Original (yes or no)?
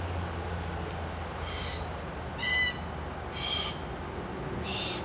yes